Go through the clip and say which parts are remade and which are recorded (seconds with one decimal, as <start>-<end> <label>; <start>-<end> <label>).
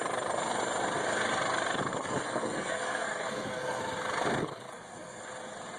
0.0-1.9 recorded; 1.9-3.8 remade; 3.8-4.4 recorded; 4.4-5.2 remade; 5.2-5.8 recorded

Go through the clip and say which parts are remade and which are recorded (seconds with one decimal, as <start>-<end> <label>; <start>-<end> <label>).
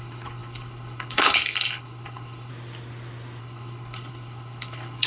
0.0-2.5 remade; 2.5-3.4 recorded; 3.4-5.1 remade